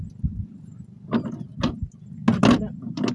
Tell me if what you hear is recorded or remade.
recorded